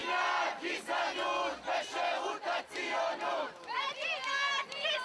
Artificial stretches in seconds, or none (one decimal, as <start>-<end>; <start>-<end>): 1.7-2.1; 2.7-5.0